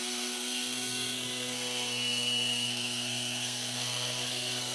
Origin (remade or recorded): remade